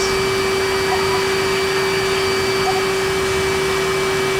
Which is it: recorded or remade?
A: recorded